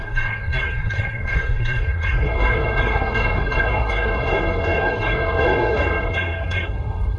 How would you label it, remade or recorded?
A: remade